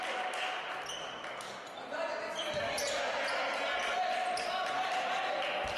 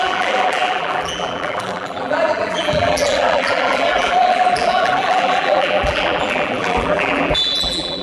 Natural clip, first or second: first